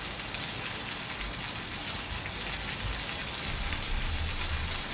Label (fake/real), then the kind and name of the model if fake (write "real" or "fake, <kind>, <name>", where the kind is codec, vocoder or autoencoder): real